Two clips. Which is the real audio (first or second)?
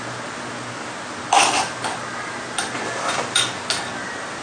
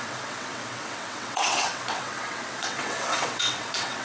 first